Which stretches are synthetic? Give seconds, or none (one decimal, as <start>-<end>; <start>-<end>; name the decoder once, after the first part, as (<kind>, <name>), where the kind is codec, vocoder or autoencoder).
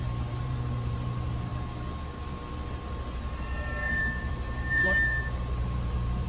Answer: 0.0-1.5 (vocoder, BigVGAN v2); 4.0-6.3